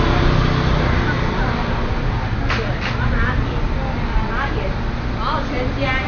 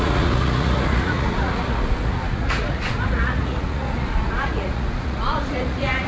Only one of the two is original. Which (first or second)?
first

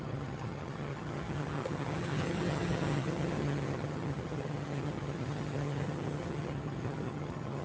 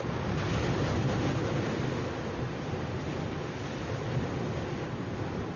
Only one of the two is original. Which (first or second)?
second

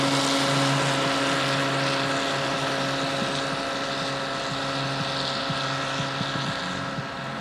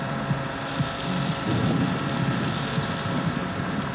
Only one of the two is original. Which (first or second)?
first